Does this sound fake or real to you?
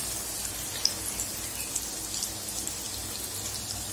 real